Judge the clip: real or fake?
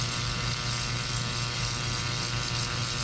real